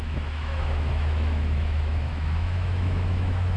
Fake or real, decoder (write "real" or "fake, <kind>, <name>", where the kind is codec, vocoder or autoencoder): fake, autoencoder, DAC-VAE